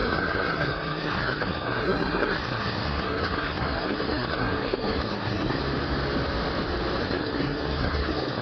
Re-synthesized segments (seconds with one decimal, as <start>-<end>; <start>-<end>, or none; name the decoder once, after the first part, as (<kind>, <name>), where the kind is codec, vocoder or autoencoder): 0.0-5.6 (codec, SNAC); 7.0-8.4

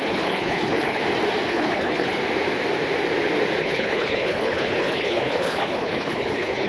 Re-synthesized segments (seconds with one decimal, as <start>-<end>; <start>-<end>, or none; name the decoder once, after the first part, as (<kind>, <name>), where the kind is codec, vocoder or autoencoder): 0.0-1.0 (codec, HILCodec); 1.5-2.2; 3.6-6.7